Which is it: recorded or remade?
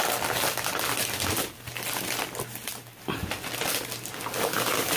recorded